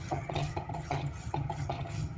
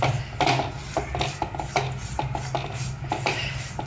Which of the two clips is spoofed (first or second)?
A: first